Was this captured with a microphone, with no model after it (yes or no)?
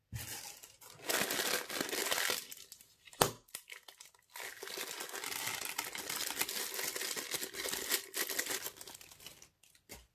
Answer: yes